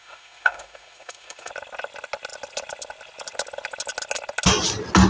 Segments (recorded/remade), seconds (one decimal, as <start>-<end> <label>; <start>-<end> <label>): 0.0-1.5 remade; 1.5-5.1 recorded